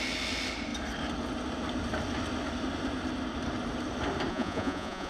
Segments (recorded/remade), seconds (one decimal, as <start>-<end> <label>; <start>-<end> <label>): 0.0-4.3 recorded; 4.3-5.1 remade